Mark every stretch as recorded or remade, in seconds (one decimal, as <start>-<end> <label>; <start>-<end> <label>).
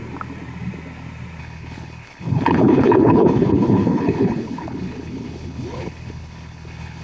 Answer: 0.0-1.4 recorded; 1.4-7.0 remade